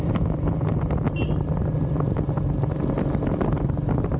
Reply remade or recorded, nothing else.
recorded